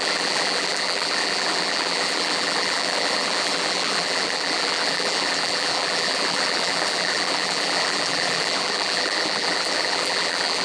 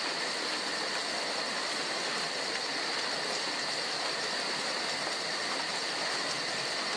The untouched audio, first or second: second